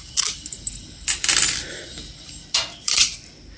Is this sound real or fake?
fake